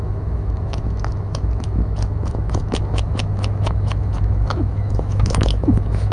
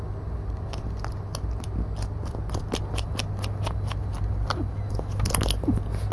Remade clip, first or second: first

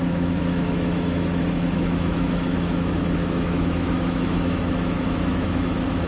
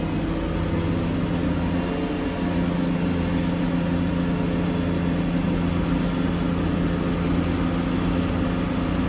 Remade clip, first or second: first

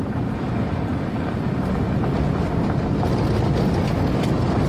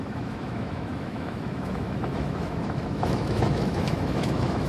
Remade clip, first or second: second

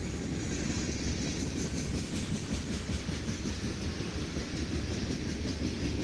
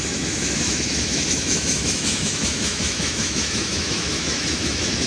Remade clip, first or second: second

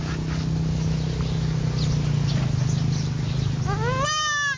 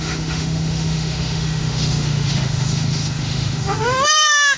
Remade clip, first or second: second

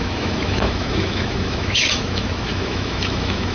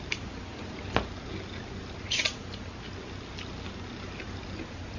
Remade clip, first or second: first